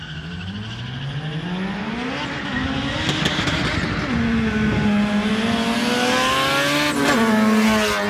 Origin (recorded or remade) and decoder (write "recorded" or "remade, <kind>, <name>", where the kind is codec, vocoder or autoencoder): recorded